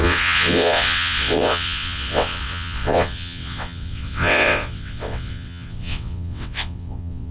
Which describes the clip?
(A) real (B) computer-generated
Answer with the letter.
B